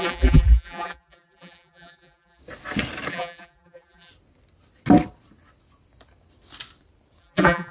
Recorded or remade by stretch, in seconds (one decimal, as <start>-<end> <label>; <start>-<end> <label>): 0.0-2.4 remade; 2.4-3.1 recorded; 3.1-4.1 remade; 4.1-7.2 recorded; 7.2-7.7 remade